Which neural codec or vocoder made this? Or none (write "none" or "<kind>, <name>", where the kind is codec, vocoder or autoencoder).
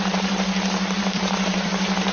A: vocoder, BigVGAN v2